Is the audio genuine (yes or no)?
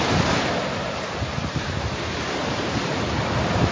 no